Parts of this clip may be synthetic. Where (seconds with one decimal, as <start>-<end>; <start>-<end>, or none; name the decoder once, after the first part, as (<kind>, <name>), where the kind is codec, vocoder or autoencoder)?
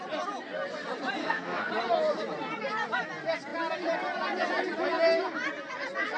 1.2-1.7 (codec, SNAC)